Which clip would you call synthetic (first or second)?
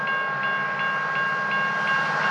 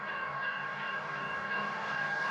second